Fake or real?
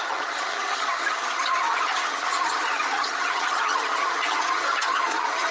fake